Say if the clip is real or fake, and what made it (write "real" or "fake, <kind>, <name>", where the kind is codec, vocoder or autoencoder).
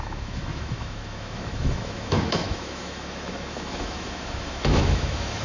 fake, autoencoder, DAC-VAE